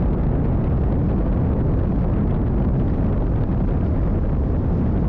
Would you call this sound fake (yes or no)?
no